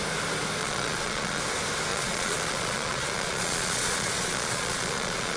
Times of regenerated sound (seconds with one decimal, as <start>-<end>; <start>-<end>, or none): 0.6-1.4; 1.9-5.4